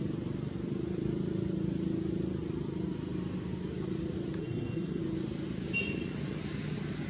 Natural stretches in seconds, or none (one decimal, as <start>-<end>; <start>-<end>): 0.0-4.4; 5.0-7.1